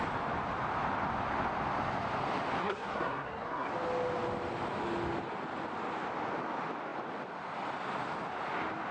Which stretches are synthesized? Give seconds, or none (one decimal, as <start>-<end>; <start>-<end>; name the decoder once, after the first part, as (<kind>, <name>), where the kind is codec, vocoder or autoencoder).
2.6-3.7 (codec, SNAC)